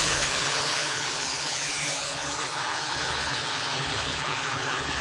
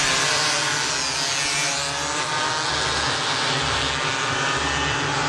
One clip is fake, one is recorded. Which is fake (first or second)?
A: first